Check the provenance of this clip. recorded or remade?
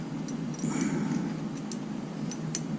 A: recorded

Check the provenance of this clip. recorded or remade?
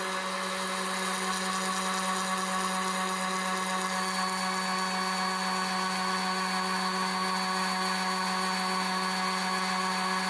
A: recorded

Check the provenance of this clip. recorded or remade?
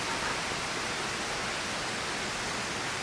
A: recorded